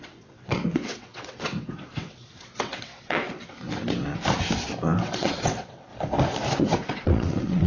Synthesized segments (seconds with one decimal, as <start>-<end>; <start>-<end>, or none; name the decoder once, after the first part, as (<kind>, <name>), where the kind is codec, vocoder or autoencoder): 0.0-3.7 (vocoder, WaveNeXt); 5.0-5.9; 6.6-7.7